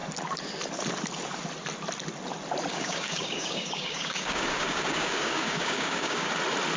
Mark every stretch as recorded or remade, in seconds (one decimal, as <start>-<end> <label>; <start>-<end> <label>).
0.0-2.7 recorded; 2.7-6.3 remade; 6.3-6.8 recorded